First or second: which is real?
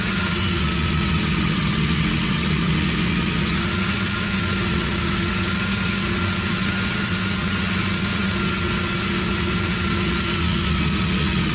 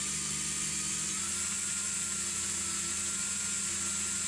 second